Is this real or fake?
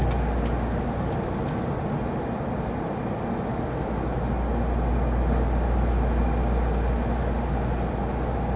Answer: real